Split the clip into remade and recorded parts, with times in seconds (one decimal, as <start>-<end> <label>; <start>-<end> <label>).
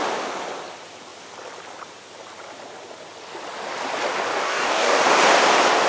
0.0-4.3 recorded; 4.3-5.0 remade; 5.0-5.9 recorded